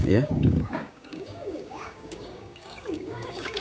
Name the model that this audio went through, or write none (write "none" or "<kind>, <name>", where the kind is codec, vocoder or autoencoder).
codec, DAC